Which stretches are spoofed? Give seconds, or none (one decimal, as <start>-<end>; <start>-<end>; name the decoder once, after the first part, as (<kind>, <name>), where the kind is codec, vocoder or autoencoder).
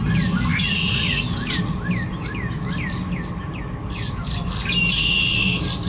0.5-1.2 (vocoder, Vocos)